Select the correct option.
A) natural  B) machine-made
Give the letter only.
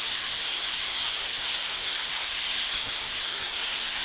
B